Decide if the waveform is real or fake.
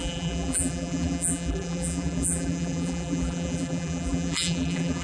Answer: fake